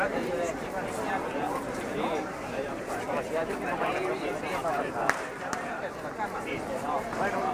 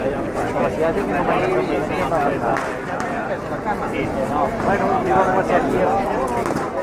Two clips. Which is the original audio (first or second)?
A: second